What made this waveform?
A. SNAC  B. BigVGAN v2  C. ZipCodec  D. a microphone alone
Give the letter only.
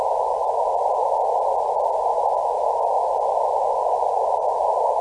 D